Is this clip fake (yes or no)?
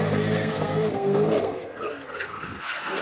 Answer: yes